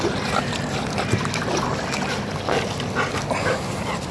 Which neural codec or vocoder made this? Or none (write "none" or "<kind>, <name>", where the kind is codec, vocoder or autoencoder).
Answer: none